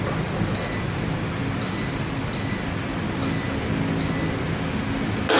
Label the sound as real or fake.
real